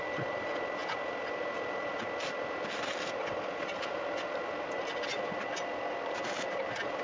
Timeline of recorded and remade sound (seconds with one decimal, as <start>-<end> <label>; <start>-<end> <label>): 0.0-7.0 recorded